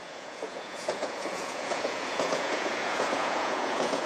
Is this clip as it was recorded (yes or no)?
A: no